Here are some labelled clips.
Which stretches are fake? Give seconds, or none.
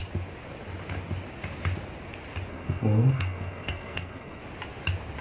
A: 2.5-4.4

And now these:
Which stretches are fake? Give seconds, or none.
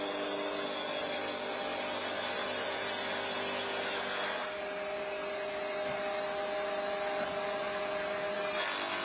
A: none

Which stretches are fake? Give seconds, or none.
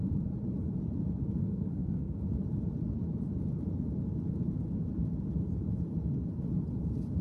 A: 1.4-2.2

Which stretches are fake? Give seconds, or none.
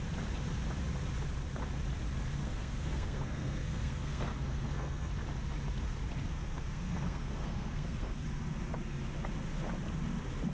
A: 2.4-5.1; 6.3-8.2